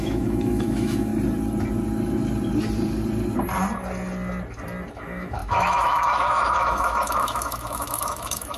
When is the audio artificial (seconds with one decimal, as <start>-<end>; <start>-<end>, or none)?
0.0-1.1; 4.9-8.6